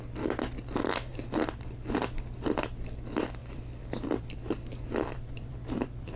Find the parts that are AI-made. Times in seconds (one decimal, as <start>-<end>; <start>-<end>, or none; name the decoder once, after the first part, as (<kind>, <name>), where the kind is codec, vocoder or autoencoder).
3.4-6.2 (vocoder, BigVGAN v2)